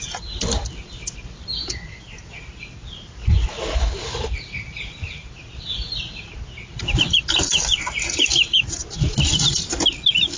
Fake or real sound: real